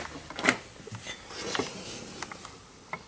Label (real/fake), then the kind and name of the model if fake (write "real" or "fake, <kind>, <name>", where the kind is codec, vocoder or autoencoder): real